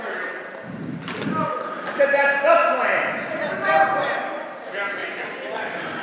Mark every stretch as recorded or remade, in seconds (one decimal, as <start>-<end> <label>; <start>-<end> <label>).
0.0-2.6 recorded; 2.6-3.1 remade; 3.1-5.0 recorded; 5.0-6.0 remade